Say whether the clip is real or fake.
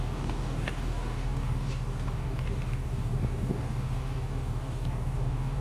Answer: fake